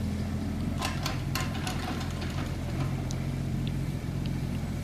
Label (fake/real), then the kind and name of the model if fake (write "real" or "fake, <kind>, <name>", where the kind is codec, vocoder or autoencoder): fake, vocoder, BigVGAN v2